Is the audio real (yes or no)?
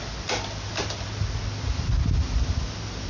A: yes